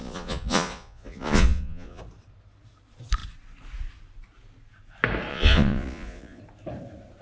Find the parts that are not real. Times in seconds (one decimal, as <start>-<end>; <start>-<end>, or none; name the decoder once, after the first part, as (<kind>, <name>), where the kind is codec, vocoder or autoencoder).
0.0-2.0 (vocoder, Vocos); 5.3-6.4